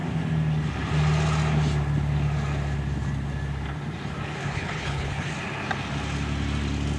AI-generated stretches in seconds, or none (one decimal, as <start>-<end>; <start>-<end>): 4.4-5.3